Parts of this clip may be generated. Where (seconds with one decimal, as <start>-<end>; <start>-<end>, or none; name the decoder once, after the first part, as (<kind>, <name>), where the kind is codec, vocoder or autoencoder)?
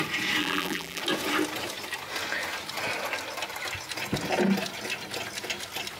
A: 0.4-1.0 (vocoder, BigVGAN v2)